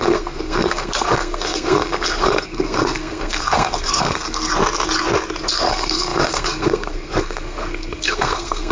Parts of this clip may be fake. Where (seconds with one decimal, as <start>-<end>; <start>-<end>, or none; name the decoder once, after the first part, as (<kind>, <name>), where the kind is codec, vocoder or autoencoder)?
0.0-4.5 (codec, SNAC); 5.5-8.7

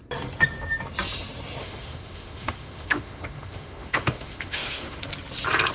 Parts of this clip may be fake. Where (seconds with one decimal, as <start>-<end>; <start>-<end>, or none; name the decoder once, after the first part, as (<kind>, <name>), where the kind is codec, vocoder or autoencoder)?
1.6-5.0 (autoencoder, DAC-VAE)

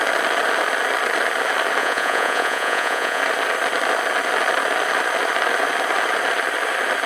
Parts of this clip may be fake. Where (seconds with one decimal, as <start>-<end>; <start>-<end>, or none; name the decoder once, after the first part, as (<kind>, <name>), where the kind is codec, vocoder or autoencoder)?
1.8-3.2 (vocoder, Vocos)